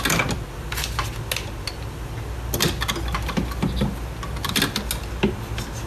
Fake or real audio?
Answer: real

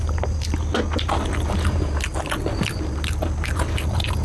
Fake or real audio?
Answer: real